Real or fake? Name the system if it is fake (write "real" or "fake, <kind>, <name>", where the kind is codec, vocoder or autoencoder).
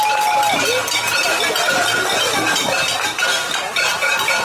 real